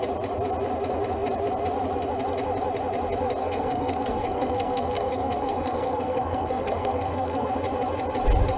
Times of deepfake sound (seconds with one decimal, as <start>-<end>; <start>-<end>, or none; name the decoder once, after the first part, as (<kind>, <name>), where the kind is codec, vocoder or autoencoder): 3.4-7.5 (codec, SNAC)